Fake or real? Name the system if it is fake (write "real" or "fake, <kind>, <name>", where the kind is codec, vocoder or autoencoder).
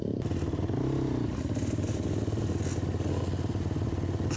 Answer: real